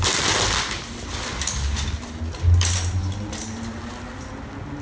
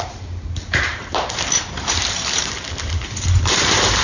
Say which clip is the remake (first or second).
second